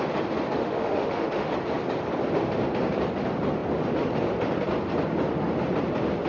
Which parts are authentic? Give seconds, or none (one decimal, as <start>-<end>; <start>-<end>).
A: 0.0-0.6; 1.5-6.3